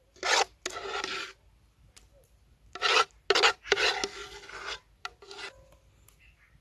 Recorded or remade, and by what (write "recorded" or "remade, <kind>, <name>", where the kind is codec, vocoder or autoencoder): recorded